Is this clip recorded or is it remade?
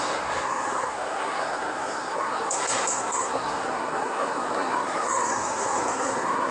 remade